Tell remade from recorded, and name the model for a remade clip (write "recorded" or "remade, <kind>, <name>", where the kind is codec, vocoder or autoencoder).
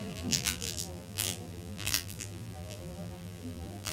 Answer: remade, vocoder, BigVGAN v2